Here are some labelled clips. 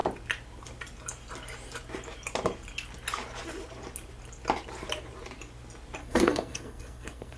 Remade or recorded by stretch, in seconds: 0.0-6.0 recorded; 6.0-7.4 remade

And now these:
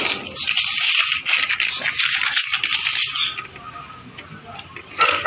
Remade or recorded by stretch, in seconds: 0.0-5.3 recorded